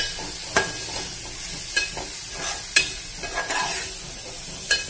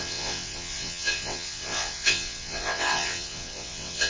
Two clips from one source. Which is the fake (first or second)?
second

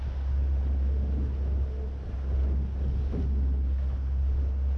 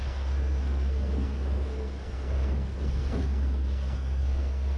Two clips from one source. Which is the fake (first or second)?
second